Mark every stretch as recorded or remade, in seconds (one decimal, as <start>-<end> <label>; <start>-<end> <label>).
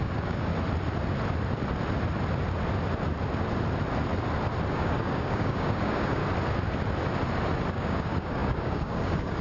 0.0-0.5 remade; 0.5-4.7 recorded; 4.7-6.2 remade; 6.2-7.7 recorded; 7.7-9.4 remade